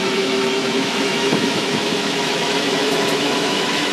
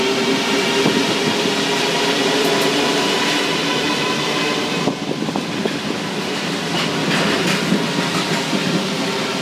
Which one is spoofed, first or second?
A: first